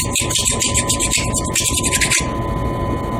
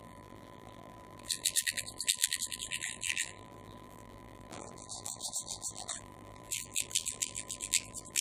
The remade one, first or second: second